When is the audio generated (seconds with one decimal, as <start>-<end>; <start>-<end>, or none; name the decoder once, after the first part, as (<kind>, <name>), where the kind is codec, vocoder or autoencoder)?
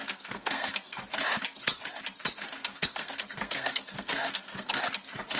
0.0-1.1 (codec, SNAC); 2.6-4.8